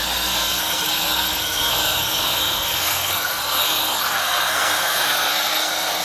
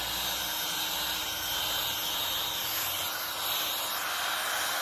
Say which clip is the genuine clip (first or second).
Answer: second